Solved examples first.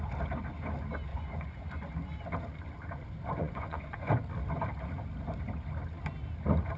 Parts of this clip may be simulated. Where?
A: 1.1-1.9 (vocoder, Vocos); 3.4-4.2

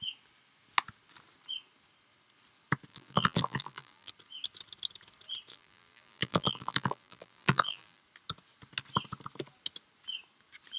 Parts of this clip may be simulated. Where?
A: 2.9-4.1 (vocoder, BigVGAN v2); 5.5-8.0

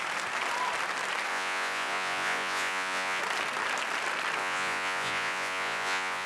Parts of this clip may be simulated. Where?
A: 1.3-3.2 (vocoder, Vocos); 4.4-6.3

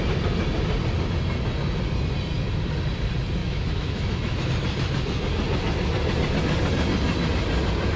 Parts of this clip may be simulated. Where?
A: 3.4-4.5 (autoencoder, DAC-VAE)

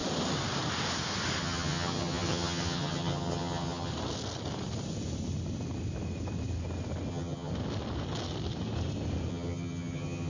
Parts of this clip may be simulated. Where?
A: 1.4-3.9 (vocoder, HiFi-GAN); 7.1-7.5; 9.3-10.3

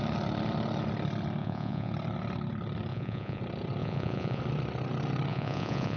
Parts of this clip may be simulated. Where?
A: 1.4-1.9 (vocoder, Vocos); 2.9-3.4; 3.8-4.4; 5.3-6.0

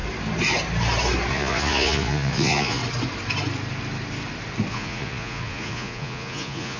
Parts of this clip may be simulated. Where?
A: 1.3-2.8 (vocoder, Vocos); 4.7-6.8

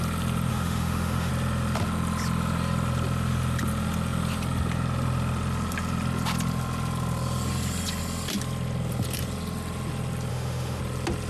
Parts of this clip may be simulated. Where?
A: 0.5-1.3 (autoencoder, DAC-VAE); 10.3-10.8